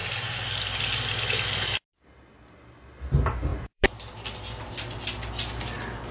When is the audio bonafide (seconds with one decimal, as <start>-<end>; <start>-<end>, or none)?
0.0-3.5; 4.6-6.1